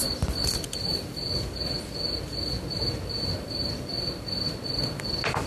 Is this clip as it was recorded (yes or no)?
yes